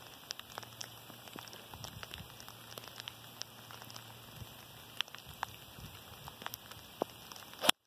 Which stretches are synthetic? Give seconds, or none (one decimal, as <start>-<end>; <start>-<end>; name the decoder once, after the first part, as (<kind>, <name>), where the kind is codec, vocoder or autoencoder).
0.8-1.4 (vocoder, BigVGAN v2)